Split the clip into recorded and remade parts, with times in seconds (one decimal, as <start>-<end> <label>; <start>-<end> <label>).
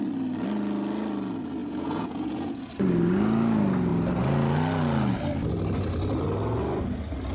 0.0-1.6 recorded; 1.6-2.7 remade; 2.7-7.3 recorded